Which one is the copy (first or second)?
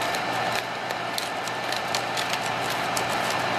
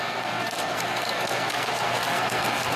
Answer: second